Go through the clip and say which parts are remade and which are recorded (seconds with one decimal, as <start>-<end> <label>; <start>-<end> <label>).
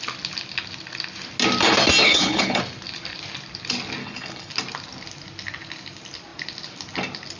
0.0-2.0 recorded; 2.0-2.6 remade; 2.6-4.0 recorded; 4.0-4.5 remade; 4.5-7.4 recorded